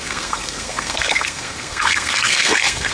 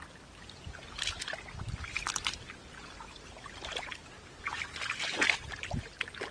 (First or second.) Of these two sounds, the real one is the second